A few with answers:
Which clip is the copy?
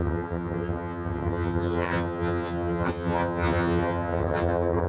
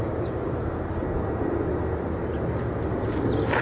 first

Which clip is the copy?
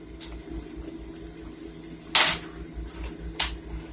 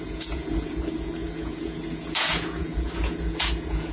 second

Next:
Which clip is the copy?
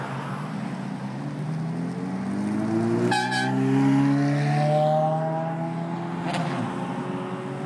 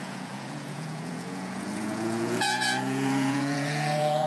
second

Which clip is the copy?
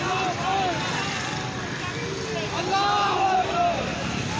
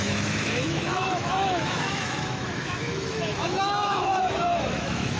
second